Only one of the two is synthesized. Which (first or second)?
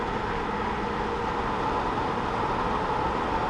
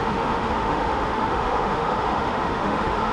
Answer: second